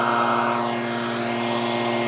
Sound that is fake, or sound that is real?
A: real